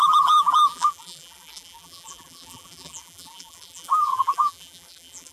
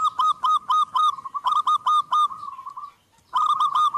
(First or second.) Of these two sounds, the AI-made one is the first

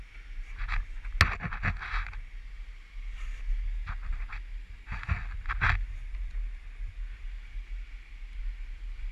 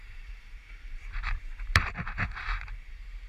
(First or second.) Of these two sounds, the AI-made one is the second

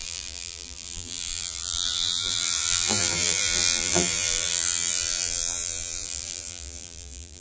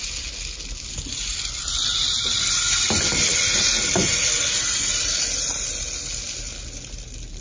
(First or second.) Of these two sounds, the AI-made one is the first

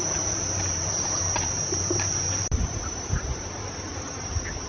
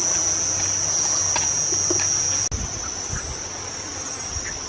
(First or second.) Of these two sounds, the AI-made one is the first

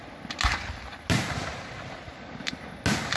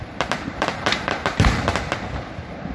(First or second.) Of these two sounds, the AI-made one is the second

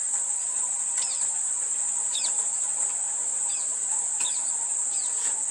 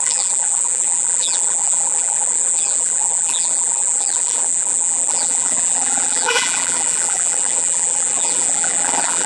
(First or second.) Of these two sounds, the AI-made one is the second